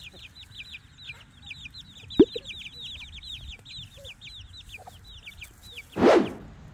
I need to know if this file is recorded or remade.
recorded